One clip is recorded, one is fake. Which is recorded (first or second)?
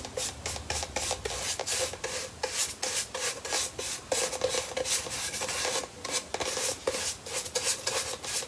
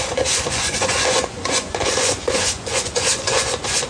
first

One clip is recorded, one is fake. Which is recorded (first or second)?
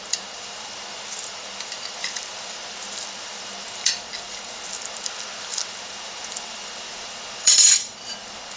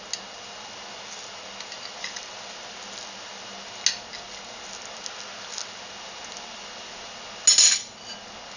second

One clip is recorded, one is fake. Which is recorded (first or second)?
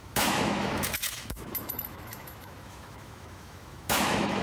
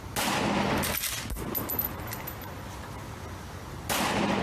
second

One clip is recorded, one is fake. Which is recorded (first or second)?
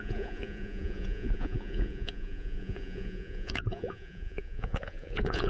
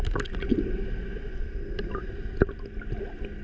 second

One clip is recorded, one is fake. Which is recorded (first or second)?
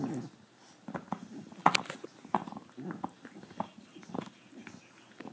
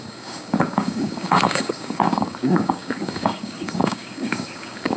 first